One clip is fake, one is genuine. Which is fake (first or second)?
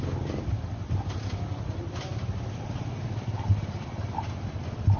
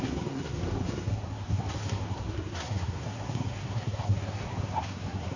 second